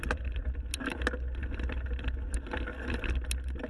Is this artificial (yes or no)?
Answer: no